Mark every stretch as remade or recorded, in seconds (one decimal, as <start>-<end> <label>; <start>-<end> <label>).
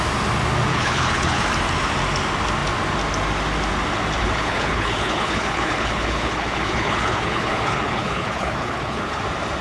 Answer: 0.0-0.7 recorded; 0.7-1.4 remade; 1.4-4.2 recorded; 4.2-9.2 remade; 9.2-9.6 recorded